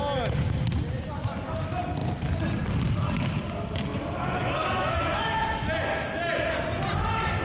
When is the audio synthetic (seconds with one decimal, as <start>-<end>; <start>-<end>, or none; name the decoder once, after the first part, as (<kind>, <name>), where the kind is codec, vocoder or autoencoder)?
none